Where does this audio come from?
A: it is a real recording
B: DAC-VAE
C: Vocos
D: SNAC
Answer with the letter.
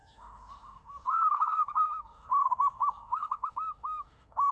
B